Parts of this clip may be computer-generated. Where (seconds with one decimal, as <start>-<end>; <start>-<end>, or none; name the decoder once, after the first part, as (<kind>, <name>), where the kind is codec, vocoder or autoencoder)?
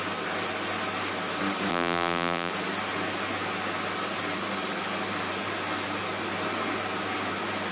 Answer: 1.7-2.5 (vocoder, BigVGAN v2)